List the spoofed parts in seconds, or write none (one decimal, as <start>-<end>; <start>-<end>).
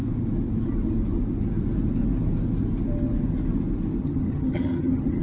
4.0-5.2